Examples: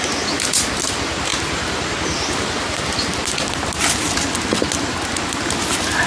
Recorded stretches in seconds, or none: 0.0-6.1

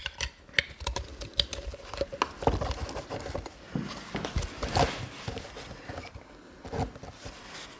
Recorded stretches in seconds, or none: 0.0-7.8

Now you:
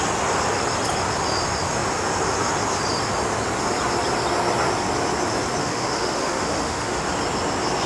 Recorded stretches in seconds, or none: 0.0-5.6; 7.1-7.9